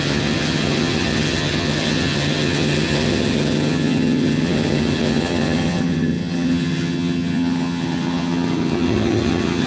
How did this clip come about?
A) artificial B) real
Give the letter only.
A